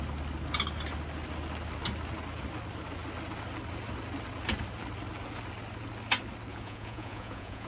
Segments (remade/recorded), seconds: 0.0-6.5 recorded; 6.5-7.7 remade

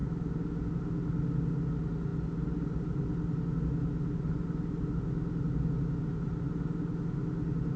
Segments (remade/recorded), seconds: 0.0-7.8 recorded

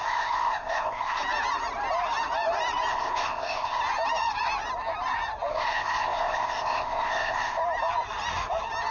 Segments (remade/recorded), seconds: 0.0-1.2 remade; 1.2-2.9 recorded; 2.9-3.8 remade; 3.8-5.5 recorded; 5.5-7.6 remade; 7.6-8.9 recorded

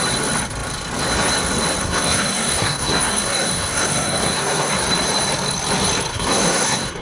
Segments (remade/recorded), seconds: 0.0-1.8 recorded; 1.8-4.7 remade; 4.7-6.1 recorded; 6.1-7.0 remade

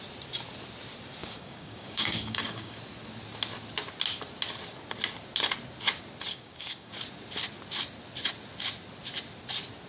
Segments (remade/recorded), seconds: 0.0-1.2 recorded; 1.2-2.8 remade; 2.8-6.3 recorded; 6.3-6.9 remade; 6.9-9.9 recorded

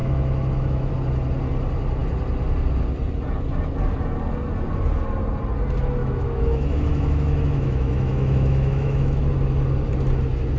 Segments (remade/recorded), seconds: 0.0-0.9 remade; 0.9-6.0 recorded; 6.0-9.2 remade; 9.2-10.6 recorded

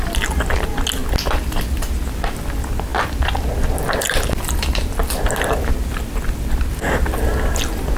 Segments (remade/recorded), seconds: 0.0-8.0 recorded